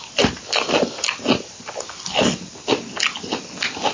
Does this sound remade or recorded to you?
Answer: recorded